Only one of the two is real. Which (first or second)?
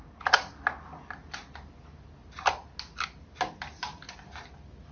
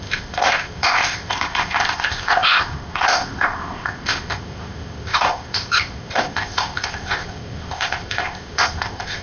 first